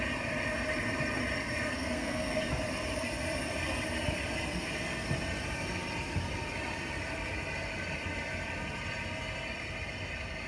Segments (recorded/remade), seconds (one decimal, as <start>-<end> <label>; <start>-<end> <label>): 0.0-1.7 recorded; 1.7-2.5 remade; 2.5-10.5 recorded